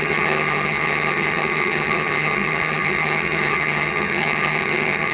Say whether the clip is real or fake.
fake